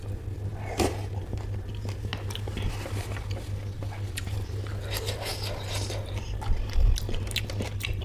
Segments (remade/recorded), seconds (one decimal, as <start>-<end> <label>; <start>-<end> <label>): 0.0-8.0 recorded